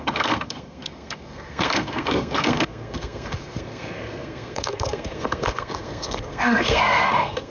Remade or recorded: remade